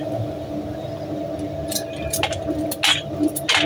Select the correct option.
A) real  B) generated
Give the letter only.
A